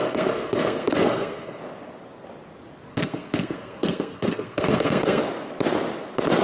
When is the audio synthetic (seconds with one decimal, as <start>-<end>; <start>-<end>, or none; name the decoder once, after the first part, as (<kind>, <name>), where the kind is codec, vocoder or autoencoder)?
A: 0.0-1.6 (codec, SNAC); 2.9-5.2